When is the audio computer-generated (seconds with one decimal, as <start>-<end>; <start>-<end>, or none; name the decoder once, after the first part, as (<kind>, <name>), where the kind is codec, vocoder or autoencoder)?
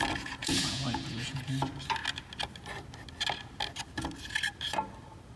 0.4-1.4 (vocoder, Vocos)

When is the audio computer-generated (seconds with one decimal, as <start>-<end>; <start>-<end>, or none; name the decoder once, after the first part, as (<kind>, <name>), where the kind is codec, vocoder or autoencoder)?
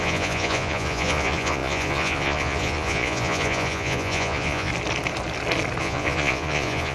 0.0-4.7 (vocoder, Vocos); 5.8-6.9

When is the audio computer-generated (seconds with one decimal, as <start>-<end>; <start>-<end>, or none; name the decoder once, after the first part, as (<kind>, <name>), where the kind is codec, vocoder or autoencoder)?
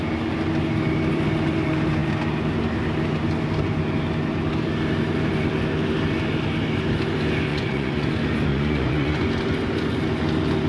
7.5-8.1 (vocoder, Vocos); 8.5-9.3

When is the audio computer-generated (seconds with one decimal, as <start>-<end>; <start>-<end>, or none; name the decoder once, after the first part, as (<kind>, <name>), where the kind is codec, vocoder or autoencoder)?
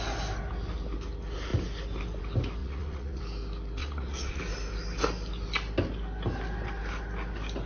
2.6-3.2 (vocoder, Vocos); 3.8-4.4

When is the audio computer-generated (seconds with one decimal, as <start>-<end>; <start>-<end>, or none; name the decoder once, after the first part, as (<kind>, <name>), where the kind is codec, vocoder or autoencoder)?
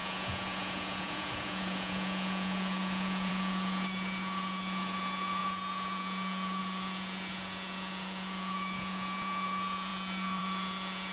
0.0-11.1 (vocoder, Vocos)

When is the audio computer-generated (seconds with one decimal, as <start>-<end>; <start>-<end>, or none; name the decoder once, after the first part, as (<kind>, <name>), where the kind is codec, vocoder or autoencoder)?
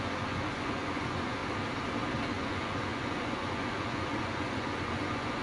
0.0-1.4 (vocoder, Vocos); 2.3-5.4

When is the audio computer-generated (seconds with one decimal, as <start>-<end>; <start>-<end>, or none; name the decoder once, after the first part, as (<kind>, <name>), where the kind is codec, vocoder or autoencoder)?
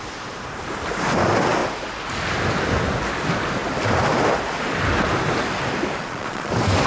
6.0-6.5 (vocoder, Vocos)